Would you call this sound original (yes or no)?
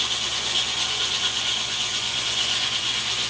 no